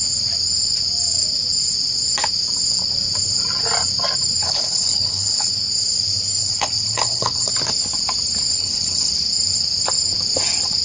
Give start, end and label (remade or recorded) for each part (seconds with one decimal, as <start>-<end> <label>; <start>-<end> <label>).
0.0-4.4 recorded; 4.4-5.5 remade; 5.5-6.4 recorded; 6.4-7.5 remade; 7.5-8.5 recorded; 8.5-9.1 remade; 9.1-10.8 recorded